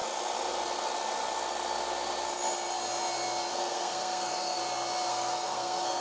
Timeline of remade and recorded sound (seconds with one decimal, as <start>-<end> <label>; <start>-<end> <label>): 0.0-3.5 recorded; 3.5-4.6 remade; 4.6-5.1 recorded; 5.1-6.0 remade